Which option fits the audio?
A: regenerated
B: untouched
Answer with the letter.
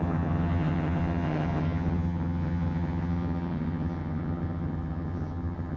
A